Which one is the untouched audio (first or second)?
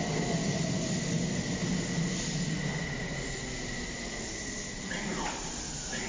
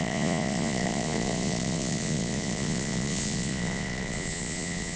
first